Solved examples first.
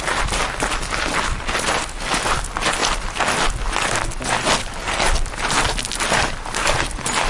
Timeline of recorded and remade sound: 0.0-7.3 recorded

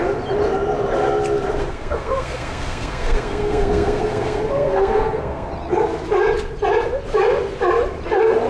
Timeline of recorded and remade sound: 0.0-1.6 recorded; 1.6-5.5 remade; 5.5-8.5 recorded

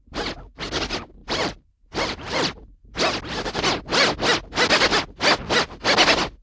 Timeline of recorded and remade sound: 0.0-1.2 recorded; 1.2-2.6 remade; 2.6-6.4 recorded

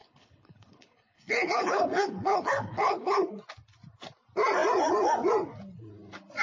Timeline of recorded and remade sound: 0.0-3.4 remade; 3.4-6.4 recorded

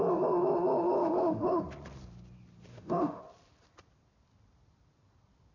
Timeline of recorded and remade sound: 0.0-1.0 recorded; 1.0-1.6 remade; 1.6-2.7 recorded; 2.7-3.2 remade; 3.2-5.5 recorded

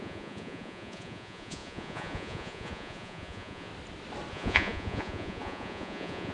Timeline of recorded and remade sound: 0.0-3.7 remade; 3.7-4.3 recorded; 4.3-6.3 remade

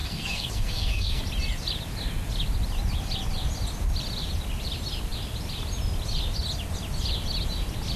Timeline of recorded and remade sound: 0.0-1.2 remade; 1.2-8.0 recorded

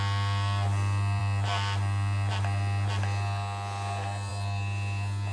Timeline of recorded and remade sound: 0.0-5.3 recorded